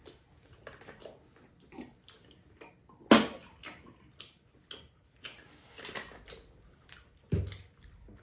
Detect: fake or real real